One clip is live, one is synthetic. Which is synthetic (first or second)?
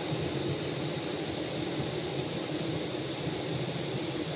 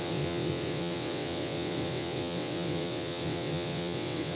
second